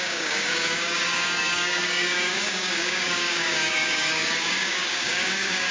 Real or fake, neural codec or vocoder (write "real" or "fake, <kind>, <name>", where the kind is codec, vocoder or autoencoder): fake, codec, DAC